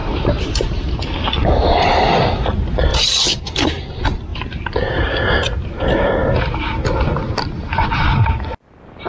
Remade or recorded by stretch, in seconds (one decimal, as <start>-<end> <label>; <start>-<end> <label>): 0.0-0.9 remade; 0.9-2.9 recorded; 2.9-3.4 remade; 3.4-9.1 recorded